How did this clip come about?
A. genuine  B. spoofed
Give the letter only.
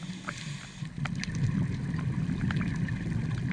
A